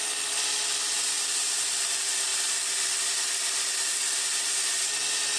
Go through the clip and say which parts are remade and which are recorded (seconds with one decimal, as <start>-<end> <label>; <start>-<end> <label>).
0.0-5.4 recorded